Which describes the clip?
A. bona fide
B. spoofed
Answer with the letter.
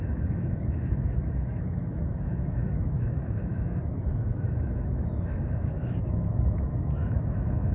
B